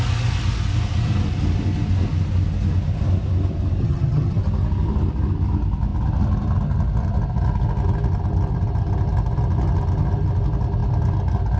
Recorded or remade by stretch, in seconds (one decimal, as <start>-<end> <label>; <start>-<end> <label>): 0.0-3.8 recorded; 3.8-4.4 remade; 4.4-11.6 recorded